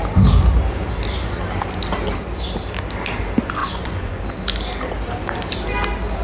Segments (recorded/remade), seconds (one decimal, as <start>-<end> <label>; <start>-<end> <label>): 0.0-3.6 recorded; 3.6-4.2 remade; 4.2-6.2 recorded